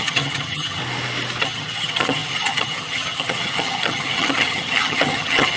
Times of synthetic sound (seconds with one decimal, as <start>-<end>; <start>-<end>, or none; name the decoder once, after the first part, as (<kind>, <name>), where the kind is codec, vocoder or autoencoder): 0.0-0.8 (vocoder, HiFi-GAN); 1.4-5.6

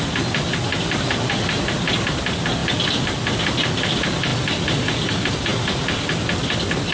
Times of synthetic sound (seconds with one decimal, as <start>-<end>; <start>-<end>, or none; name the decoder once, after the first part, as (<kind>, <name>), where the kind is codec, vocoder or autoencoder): none

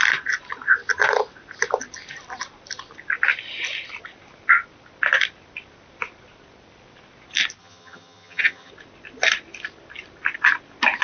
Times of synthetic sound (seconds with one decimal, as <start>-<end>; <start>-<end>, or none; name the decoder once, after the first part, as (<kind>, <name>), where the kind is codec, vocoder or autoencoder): 7.6-8.7 (vocoder, HiFi-GAN)